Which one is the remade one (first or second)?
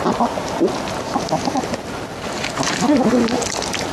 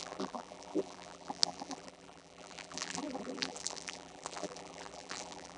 second